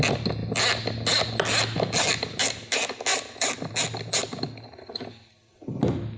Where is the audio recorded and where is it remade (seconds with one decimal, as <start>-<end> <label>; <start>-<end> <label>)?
0.0-3.1 recorded; 3.1-3.7 remade; 3.7-4.2 recorded; 4.2-5.6 remade; 5.6-6.2 recorded